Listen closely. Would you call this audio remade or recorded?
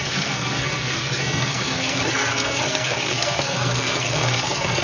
remade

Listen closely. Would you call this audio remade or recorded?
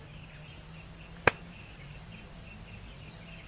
recorded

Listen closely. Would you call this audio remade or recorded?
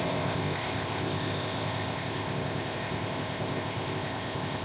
remade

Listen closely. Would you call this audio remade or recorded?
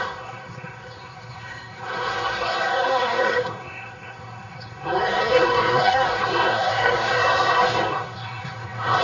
remade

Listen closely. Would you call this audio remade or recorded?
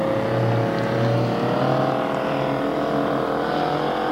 recorded